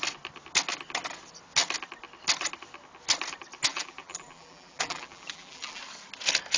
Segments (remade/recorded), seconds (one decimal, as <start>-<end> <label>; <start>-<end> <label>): 0.0-3.7 recorded; 3.7-5.8 remade; 5.8-6.6 recorded

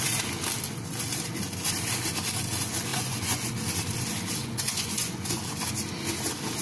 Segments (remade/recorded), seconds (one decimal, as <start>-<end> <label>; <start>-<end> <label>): 0.0-2.9 recorded; 2.9-3.5 remade; 3.5-4.4 recorded; 4.4-5.4 remade; 5.4-6.6 recorded